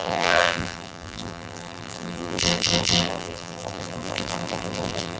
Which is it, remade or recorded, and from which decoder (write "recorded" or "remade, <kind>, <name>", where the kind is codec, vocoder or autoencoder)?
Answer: remade, vocoder, BigVGAN v2